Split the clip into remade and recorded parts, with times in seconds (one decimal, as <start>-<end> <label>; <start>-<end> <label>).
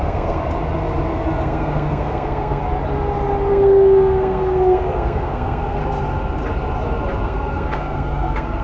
0.0-0.4 remade; 0.4-1.4 recorded; 1.4-2.6 remade; 2.6-3.5 recorded; 3.5-5.8 remade; 5.8-7.2 recorded; 7.2-8.6 remade